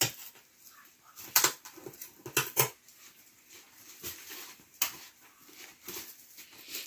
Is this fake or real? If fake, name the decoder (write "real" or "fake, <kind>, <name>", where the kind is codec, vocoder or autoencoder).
real